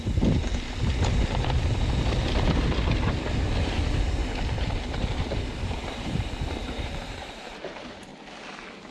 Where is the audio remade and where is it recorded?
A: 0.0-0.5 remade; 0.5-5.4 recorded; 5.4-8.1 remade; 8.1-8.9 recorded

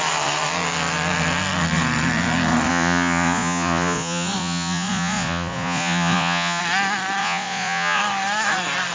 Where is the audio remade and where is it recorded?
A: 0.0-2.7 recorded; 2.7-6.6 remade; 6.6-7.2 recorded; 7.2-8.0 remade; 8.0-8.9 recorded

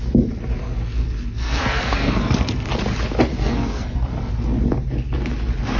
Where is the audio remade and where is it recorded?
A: 0.0-0.6 recorded; 0.6-2.7 remade; 2.7-3.3 recorded; 3.3-4.3 remade; 4.3-5.8 recorded

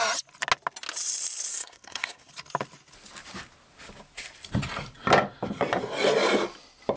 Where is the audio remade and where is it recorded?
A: 0.0-1.5 recorded; 1.5-2.3 remade; 2.3-7.0 recorded

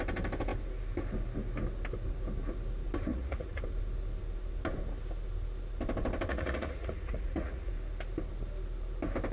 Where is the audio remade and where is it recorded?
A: 0.0-3.1 recorded; 3.1-3.6 remade; 3.6-6.3 recorded; 6.3-7.7 remade; 7.7-9.3 recorded

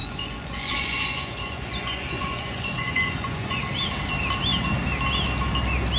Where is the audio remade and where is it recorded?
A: 0.0-3.6 remade; 3.6-6.0 recorded